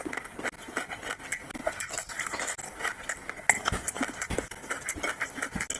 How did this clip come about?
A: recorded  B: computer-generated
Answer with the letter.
A